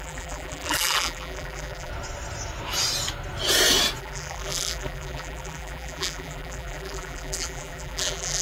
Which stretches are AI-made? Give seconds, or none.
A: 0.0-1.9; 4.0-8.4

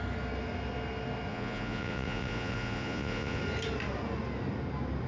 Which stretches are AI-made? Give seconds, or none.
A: 1.3-3.4

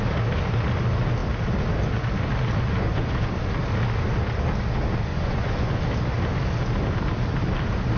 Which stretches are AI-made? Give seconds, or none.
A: 2.9-3.4; 5.1-5.8

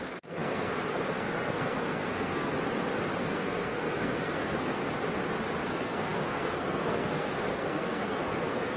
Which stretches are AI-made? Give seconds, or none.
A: 0.0-2.5; 3.2-4.8; 5.6-8.8

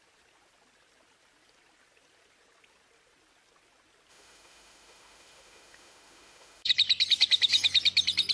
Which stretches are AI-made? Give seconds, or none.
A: 4.1-6.7